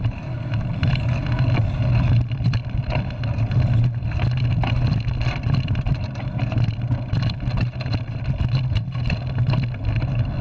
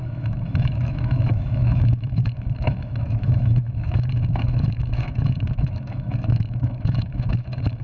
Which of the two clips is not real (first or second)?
second